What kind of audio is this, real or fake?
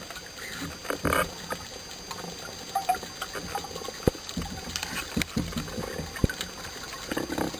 real